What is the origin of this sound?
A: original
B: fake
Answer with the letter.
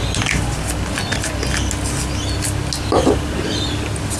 A